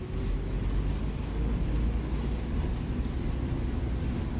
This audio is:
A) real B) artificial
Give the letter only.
A